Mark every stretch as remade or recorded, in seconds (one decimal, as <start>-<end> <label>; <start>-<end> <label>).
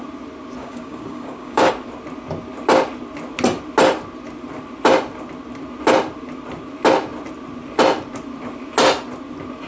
0.0-0.6 recorded; 0.6-1.7 remade; 1.7-9.7 recorded